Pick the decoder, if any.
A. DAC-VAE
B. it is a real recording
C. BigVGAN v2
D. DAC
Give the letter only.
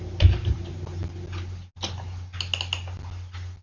B